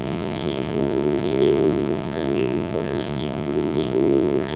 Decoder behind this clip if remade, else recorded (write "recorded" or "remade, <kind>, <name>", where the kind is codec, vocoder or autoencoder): remade, vocoder, Vocos